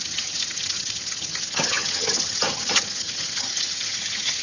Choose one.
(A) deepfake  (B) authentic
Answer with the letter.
A